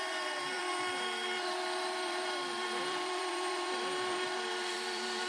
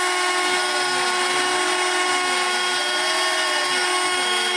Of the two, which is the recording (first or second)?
second